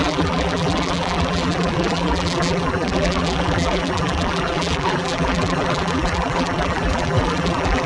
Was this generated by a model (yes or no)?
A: yes